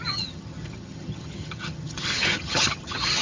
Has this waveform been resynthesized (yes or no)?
yes